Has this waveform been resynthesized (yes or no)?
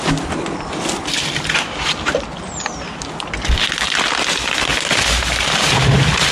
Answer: no